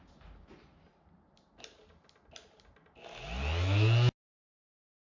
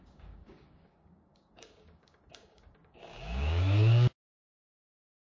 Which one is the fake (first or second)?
second